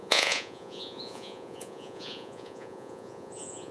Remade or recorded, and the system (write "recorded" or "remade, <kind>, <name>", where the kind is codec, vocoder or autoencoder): remade, vocoder, Vocos